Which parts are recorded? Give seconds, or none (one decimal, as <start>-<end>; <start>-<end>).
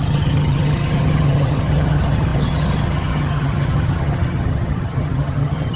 none